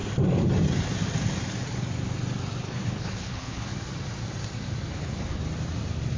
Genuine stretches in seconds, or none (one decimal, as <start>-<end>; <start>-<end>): 0.0-2.6; 3.7-4.9; 5.4-6.2